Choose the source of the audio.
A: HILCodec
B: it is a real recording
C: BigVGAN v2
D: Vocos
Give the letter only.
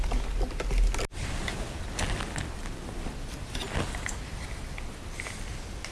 B